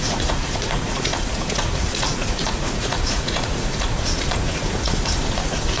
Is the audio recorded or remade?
remade